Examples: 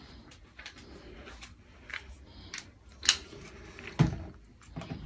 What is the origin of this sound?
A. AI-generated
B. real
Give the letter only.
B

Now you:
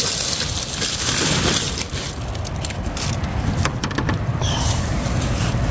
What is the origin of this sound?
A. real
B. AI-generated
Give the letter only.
A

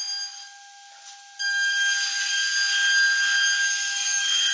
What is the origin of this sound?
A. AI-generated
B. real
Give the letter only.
B